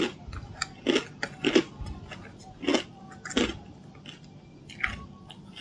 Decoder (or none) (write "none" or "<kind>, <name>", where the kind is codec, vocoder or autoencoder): none